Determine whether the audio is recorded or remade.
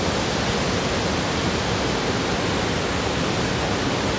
recorded